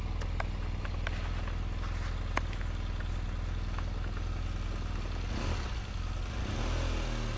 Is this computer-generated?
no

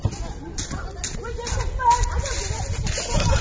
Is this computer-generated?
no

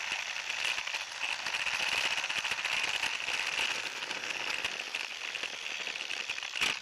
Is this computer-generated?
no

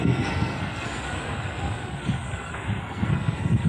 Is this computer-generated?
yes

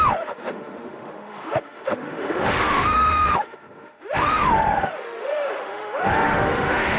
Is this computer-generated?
yes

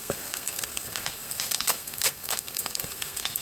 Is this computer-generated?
yes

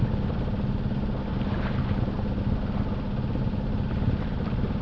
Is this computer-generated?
no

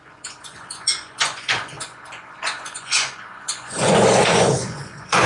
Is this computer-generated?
yes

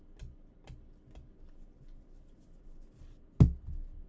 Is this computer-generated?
no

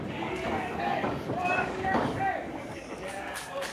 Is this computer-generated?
yes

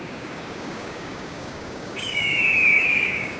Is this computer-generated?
yes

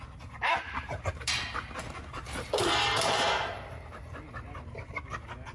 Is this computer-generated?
yes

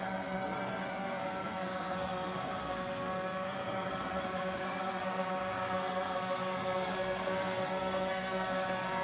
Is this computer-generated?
yes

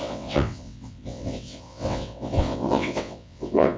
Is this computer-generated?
yes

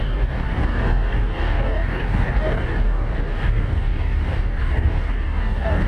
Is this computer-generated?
yes